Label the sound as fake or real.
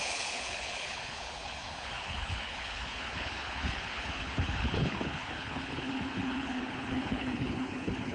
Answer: fake